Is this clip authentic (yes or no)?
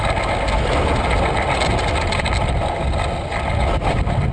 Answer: yes